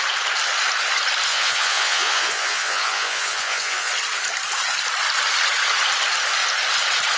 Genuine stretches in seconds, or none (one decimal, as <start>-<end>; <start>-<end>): 0.0-1.3; 3.9-7.2